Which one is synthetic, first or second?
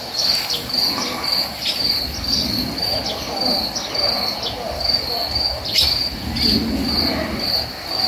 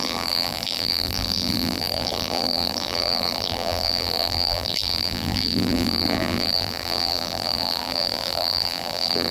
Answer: second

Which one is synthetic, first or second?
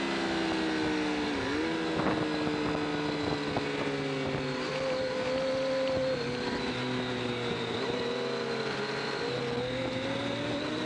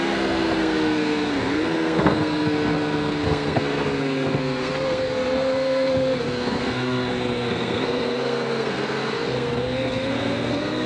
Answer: second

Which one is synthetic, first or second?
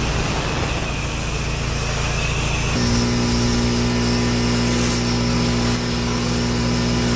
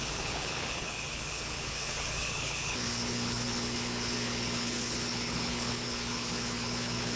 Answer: second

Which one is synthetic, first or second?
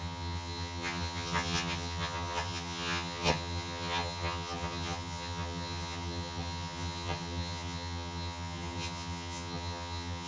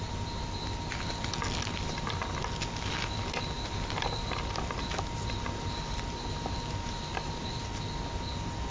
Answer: first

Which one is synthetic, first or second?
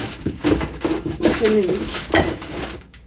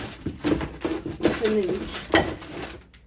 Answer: first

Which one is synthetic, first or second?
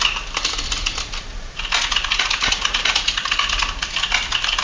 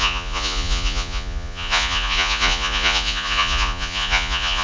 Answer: second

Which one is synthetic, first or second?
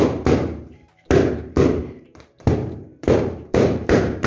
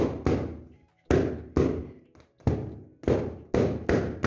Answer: first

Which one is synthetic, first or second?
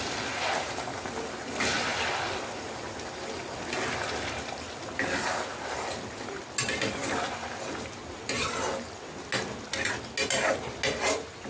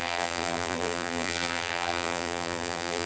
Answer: second